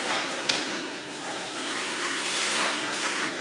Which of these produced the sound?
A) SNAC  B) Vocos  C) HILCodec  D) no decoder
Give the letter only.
A